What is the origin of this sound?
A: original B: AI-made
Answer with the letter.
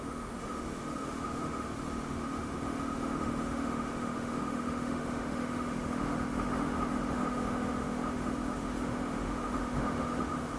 B